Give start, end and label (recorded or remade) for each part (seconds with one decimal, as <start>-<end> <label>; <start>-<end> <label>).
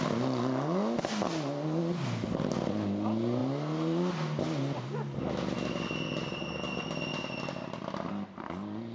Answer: 0.0-8.9 recorded